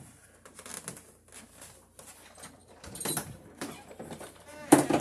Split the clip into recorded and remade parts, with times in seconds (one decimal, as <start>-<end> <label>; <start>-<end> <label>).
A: 0.0-2.6 recorded; 2.6-4.4 remade; 4.4-5.0 recorded